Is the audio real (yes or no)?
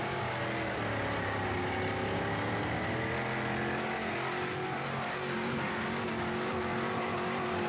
yes